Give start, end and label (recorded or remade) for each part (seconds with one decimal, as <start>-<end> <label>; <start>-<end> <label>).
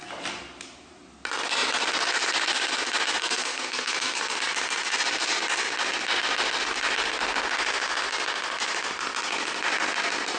0.0-3.2 recorded; 3.2-4.4 remade; 4.4-10.4 recorded